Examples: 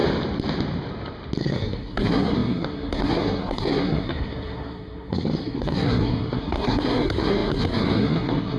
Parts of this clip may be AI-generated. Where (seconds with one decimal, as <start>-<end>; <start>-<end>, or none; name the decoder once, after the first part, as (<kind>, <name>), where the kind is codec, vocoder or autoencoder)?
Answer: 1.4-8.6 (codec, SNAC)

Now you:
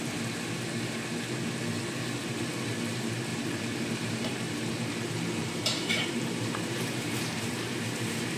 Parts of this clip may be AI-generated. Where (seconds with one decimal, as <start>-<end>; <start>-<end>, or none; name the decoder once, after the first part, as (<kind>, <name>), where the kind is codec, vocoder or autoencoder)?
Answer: 3.3-8.4 (vocoder, BigVGAN v2)

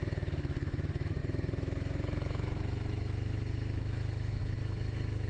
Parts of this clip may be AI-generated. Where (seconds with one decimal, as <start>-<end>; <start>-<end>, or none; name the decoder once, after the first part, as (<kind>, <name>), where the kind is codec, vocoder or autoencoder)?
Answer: 0.0-5.3 (autoencoder, DAC-VAE)